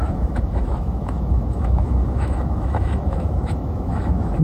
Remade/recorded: remade